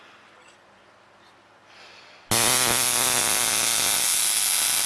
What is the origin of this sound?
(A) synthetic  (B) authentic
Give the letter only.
B